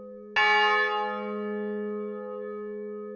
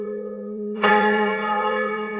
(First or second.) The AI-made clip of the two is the second